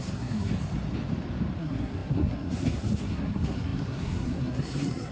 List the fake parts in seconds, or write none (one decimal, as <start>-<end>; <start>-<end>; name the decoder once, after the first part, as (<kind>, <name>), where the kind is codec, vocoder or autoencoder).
0.0-0.5 (codec, SNAC); 1.6-5.1